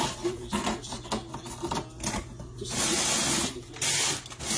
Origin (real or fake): real